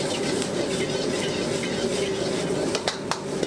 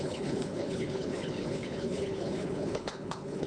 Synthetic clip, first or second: second